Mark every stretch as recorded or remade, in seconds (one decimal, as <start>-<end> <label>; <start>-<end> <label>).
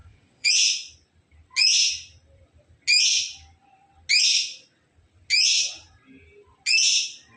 0.0-0.5 remade; 0.5-7.4 recorded